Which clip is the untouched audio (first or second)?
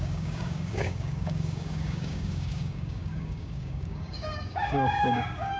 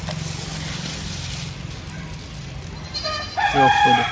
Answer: second